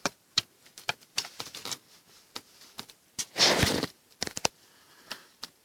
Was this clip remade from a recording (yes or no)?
yes